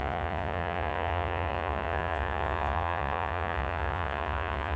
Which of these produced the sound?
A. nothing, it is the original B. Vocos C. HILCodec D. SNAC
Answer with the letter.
B